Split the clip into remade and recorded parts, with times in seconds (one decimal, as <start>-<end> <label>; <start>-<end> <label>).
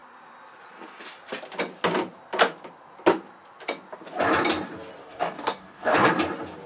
0.0-5.0 recorded; 5.0-6.1 remade; 6.1-6.7 recorded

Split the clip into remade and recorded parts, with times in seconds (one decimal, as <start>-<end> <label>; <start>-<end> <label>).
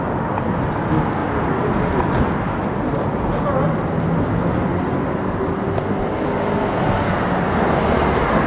0.0-8.5 recorded